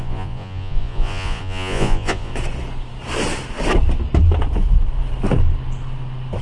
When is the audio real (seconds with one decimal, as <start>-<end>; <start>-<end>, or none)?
2.3-6.4